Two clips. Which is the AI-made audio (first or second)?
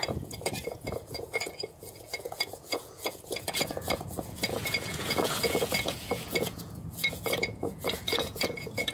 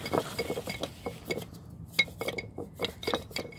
first